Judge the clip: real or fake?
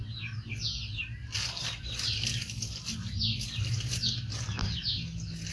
real